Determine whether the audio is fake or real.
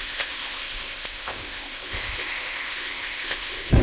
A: fake